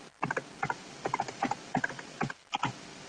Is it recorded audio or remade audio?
remade